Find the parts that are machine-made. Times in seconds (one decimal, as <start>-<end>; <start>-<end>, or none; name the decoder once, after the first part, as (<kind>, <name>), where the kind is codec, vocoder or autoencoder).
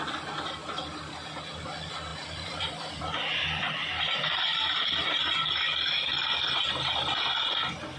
2.1-5.0 (vocoder, BigVGAN v2); 6.1-6.7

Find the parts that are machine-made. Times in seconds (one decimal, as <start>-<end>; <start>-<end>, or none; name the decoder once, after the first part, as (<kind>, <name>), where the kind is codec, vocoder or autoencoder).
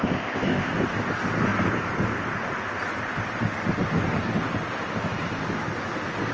0.0-0.7 (codec, ZipCodec)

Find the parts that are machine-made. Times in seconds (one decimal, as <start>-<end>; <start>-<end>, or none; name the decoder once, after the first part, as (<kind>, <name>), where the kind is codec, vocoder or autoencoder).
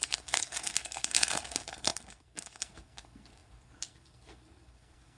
0.0-5.2 (codec, SNAC)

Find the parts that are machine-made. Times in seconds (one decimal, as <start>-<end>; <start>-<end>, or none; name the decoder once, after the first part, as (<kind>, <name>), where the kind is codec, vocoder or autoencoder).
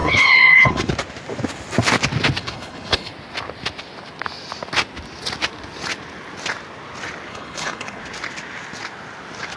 0.0-0.9 (codec, HILCodec); 2.4-3.1; 7.3-8.0